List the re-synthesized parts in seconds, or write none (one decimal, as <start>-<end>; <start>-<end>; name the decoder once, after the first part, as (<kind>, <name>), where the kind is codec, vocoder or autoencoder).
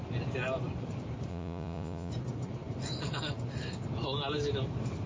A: 1.3-2.1 (vocoder, Vocos)